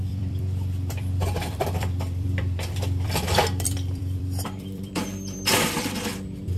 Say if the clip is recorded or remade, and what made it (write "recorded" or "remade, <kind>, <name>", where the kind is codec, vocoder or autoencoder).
remade, vocoder, BigVGAN v2